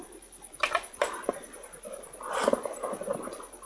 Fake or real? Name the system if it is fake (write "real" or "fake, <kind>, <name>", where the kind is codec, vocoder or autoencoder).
real